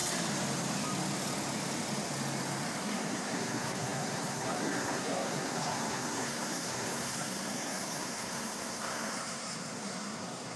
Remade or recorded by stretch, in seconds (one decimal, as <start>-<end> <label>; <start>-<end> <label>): 0.0-2.8 recorded; 2.8-10.6 remade